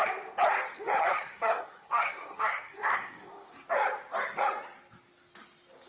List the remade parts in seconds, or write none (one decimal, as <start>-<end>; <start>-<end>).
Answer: 1.0-3.5